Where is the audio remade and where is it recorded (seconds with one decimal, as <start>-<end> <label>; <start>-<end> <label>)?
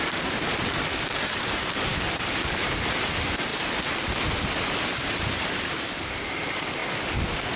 0.0-3.5 remade; 3.5-5.0 recorded; 5.0-6.8 remade; 6.8-7.6 recorded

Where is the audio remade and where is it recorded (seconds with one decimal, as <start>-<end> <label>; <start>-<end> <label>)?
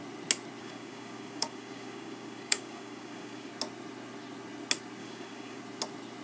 0.0-0.6 recorded; 0.6-3.5 remade; 3.5-5.0 recorded; 5.0-5.6 remade; 5.6-6.2 recorded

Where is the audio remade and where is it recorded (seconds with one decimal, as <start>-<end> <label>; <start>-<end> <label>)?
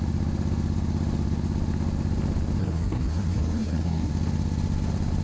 0.0-2.6 recorded; 2.6-4.1 remade; 4.1-5.2 recorded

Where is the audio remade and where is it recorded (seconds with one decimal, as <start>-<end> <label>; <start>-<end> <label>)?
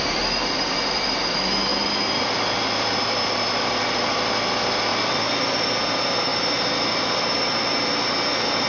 0.0-1.7 recorded; 1.7-3.4 remade; 3.4-4.9 recorded; 4.9-5.8 remade; 5.8-6.3 recorded; 6.3-7.2 remade; 7.2-8.7 recorded